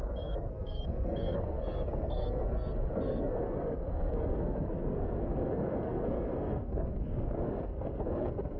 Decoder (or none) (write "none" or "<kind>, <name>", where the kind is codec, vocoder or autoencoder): codec, SNAC